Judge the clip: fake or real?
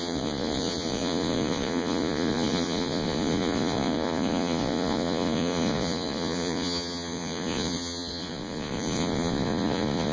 fake